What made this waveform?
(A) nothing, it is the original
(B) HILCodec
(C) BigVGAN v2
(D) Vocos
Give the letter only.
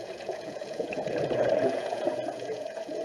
D